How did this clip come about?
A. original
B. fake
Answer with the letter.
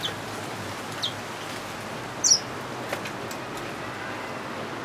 A